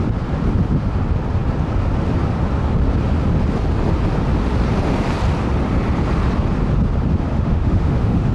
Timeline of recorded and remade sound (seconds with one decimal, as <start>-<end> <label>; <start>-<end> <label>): 0.0-7.3 recorded; 7.3-8.3 remade